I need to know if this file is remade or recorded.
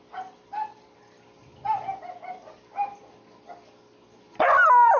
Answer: recorded